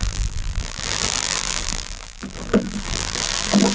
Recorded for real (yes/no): no